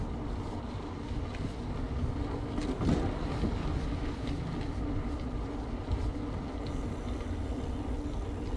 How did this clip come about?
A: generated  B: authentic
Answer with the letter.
B